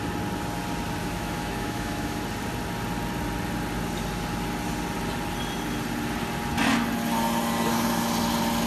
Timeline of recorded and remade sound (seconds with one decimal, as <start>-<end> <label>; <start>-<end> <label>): 0.0-1.0 recorded; 1.0-2.2 remade; 2.2-8.7 recorded